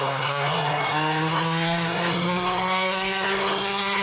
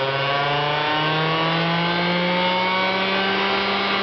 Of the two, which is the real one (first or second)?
second